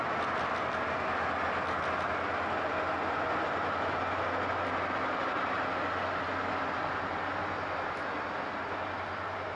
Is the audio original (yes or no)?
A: yes